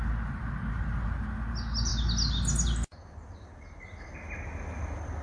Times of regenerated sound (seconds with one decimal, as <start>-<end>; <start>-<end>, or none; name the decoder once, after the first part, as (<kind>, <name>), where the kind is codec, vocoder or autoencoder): none